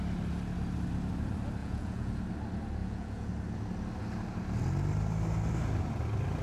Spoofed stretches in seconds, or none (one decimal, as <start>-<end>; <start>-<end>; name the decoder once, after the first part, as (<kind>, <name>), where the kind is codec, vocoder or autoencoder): 1.6-2.2 (vocoder, Vocos); 2.8-3.3